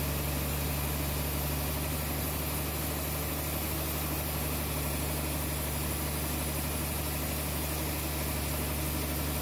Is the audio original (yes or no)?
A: yes